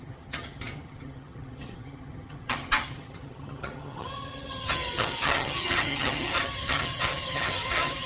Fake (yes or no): yes